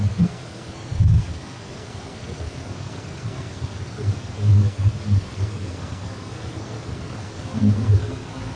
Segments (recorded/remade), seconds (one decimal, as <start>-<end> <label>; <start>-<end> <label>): 0.0-8.6 remade